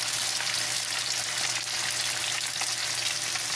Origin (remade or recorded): recorded